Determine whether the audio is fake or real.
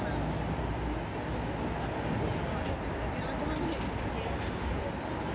real